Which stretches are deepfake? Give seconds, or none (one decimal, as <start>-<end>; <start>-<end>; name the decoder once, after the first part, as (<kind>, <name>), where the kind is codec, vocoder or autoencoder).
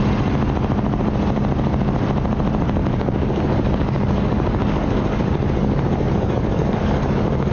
2.8-7.5 (codec, DAC)